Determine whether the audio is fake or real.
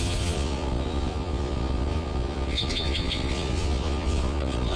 fake